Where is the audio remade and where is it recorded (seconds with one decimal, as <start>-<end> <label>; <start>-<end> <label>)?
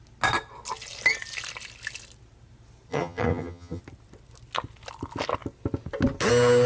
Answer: 0.0-2.9 recorded; 2.9-3.8 remade; 3.8-6.7 recorded